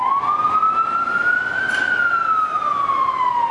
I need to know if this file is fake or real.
real